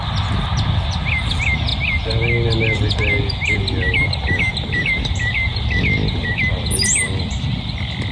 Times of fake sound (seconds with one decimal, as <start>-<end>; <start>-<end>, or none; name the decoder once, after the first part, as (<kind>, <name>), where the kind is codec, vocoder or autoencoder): none